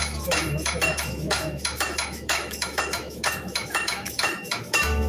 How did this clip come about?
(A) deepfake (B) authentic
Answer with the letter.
A